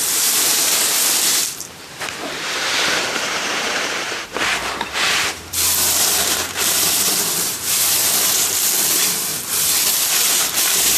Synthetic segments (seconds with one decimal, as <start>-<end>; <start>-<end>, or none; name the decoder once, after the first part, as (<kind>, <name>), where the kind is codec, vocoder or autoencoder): 0.0-9.3 (vocoder, BigVGAN v2); 10.1-11.0